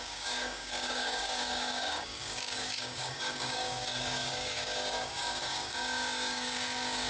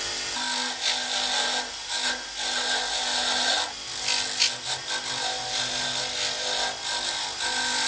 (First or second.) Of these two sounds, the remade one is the first